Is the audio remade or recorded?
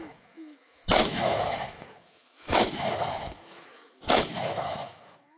remade